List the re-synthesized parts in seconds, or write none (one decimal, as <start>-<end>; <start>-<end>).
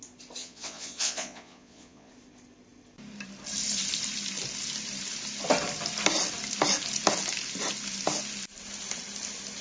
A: 0.4-2.1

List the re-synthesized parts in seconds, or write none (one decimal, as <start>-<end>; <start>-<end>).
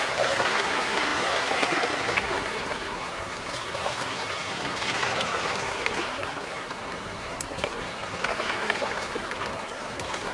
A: 0.0-10.3